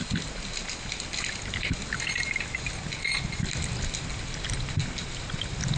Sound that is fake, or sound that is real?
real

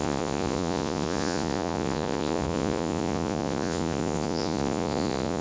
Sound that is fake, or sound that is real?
fake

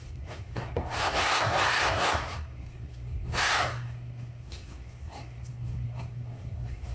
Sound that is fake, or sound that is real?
fake